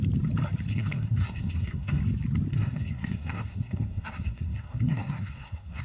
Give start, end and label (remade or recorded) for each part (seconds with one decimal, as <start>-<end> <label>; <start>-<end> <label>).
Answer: 0.0-0.7 recorded; 0.7-2.0 remade; 2.0-2.5 recorded; 2.5-5.8 remade